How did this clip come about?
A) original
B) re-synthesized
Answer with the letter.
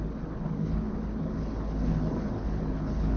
B